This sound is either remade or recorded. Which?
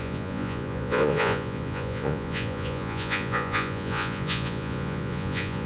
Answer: remade